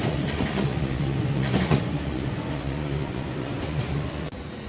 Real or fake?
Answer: fake